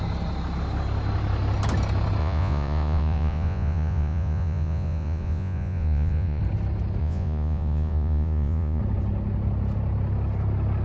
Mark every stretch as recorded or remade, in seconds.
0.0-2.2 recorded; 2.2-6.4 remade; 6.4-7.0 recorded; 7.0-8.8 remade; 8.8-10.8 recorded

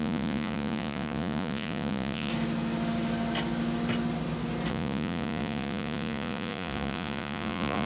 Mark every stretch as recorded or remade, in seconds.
0.0-2.3 remade; 2.3-4.7 recorded; 4.7-7.9 remade

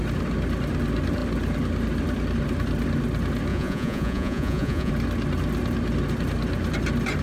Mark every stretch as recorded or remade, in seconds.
0.0-3.5 recorded; 3.5-4.9 remade; 4.9-7.2 recorded

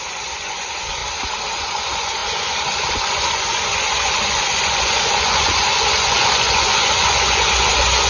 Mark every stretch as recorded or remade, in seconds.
0.0-1.0 remade; 1.0-1.5 recorded; 1.5-8.1 remade

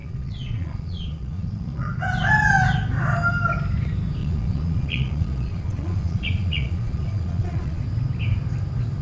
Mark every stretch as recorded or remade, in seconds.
0.0-1.9 remade; 1.9-4.2 recorded; 4.2-7.8 remade; 7.8-9.0 recorded

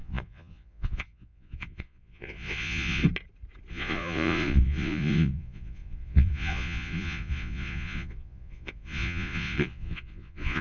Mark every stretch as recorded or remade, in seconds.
0.0-3.0 remade; 3.0-3.7 recorded; 3.7-10.6 remade

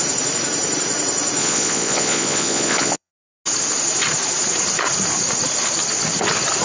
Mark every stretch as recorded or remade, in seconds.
0.0-1.4 recorded; 1.4-3.1 remade; 3.1-6.6 recorded

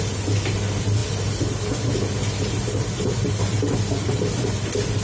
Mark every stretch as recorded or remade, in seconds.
0.0-5.0 recorded